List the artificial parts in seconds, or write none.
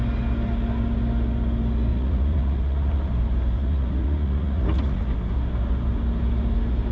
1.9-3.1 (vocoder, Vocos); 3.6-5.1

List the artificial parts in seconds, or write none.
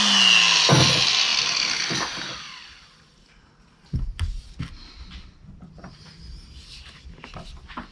none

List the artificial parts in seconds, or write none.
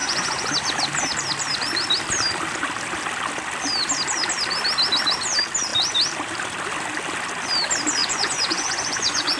0.0-0.5 (vocoder, Vocos); 8.0-9.4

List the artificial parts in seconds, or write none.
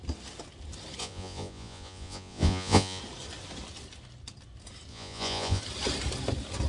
1.0-3.0 (vocoder, Vocos); 4.9-5.6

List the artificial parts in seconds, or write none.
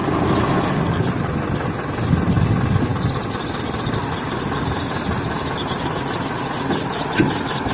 none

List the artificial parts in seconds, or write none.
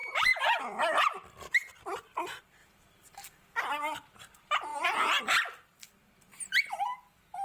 0.0-0.6 (vocoder, Vocos); 4.7-5.2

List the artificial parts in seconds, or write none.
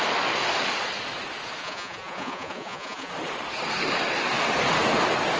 1.6-3.1 (vocoder, Vocos)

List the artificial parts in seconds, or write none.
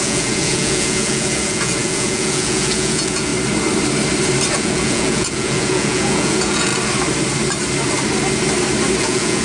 0.0-3.3 (vocoder, Vocos); 4.5-6.7; 9.0-9.4